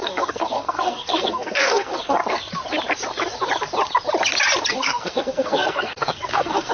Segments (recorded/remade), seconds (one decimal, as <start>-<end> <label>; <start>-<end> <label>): 0.0-2.2 remade; 2.2-4.7 recorded; 4.7-6.7 remade